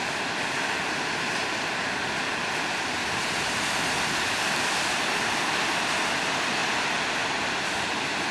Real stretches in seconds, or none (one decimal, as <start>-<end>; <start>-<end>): 0.0-8.3